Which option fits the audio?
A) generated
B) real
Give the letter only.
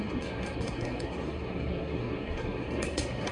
A